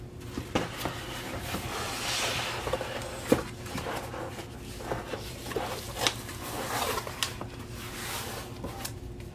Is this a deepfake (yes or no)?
no